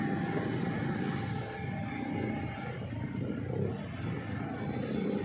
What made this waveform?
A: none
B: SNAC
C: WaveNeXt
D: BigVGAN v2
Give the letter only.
A